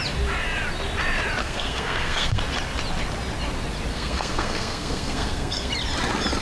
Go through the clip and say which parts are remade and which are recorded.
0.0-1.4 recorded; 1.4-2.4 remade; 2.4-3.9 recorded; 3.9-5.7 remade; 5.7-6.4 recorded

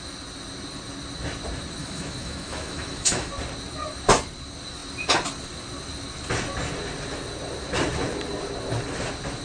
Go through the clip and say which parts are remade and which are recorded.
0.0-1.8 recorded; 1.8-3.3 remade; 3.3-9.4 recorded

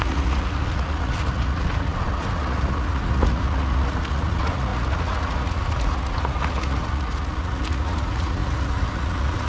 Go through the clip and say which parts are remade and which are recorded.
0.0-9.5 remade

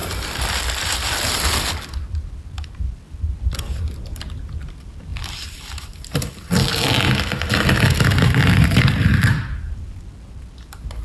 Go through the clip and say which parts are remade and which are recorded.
0.0-4.4 remade; 4.4-5.1 recorded; 5.1-6.4 remade; 6.4-8.4 recorded; 8.4-9.8 remade; 9.8-11.0 recorded

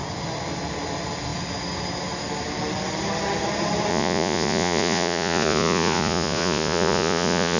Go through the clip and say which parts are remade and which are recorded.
0.0-3.9 recorded; 3.9-7.6 remade

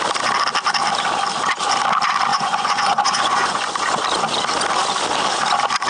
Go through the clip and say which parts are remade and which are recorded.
0.0-2.3 recorded; 2.3-3.7 remade; 3.7-5.9 recorded

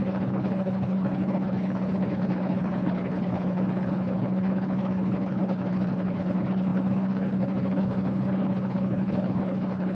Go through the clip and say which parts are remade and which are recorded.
0.0-9.9 remade